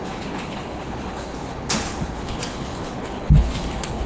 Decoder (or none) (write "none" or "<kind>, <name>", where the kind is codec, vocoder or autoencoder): codec, HILCodec